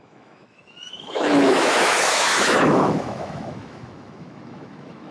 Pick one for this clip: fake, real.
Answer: fake